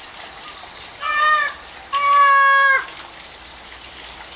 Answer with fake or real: real